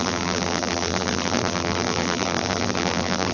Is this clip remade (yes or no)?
yes